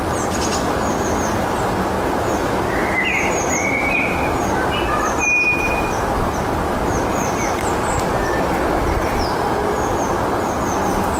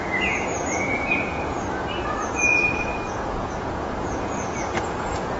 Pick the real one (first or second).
first